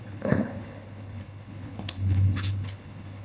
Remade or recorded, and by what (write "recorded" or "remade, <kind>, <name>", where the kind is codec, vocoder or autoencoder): remade, codec, HILCodec